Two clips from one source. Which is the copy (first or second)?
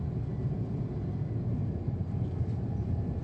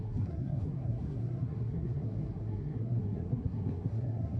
second